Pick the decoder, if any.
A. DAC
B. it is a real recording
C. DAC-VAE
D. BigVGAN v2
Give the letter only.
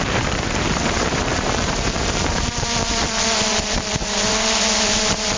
D